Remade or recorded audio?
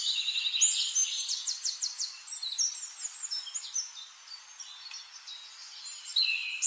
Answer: recorded